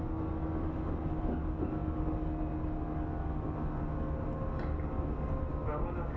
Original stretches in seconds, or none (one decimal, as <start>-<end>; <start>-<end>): 0.0-6.2